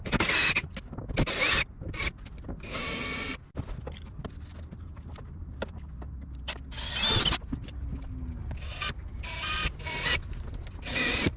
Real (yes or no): yes